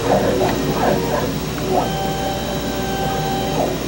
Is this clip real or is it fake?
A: real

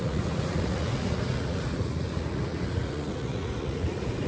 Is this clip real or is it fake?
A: fake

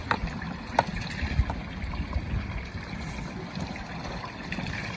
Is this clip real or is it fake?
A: fake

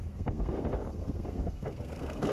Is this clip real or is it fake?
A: fake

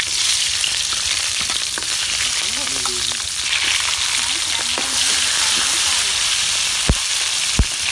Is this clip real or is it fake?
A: real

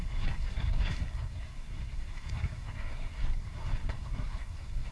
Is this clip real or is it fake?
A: fake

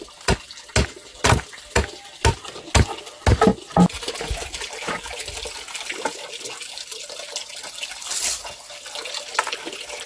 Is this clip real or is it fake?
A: real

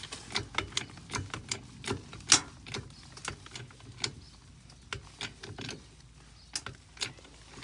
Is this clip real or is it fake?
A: real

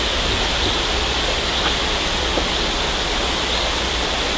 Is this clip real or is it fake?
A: real